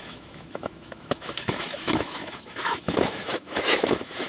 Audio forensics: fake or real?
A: fake